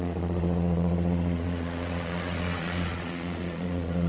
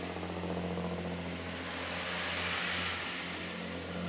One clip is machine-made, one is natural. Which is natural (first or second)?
second